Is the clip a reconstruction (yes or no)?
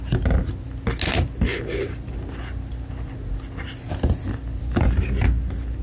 no